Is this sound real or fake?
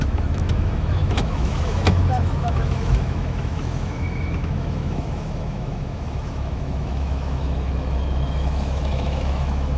fake